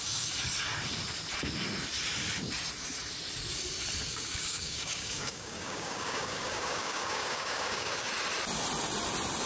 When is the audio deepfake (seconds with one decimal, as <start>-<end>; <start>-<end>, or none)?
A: 4.1-8.1